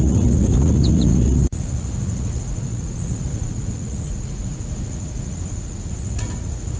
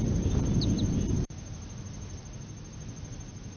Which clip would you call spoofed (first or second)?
first